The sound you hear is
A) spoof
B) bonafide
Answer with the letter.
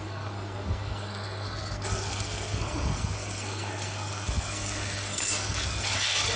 A